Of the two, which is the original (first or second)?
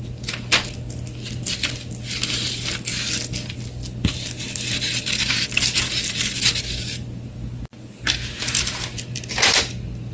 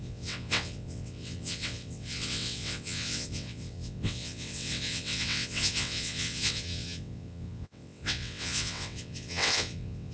first